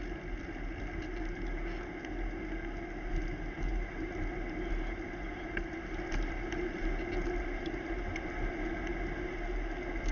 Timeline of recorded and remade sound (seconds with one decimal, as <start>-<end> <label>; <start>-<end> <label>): 0.0-10.1 recorded